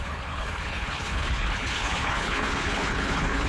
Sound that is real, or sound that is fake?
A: fake